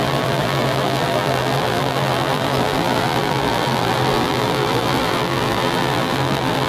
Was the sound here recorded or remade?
remade